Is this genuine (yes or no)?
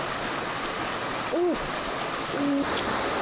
yes